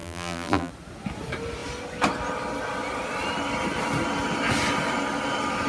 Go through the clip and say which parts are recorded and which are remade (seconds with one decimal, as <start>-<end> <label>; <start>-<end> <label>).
0.0-0.7 remade; 0.7-5.7 recorded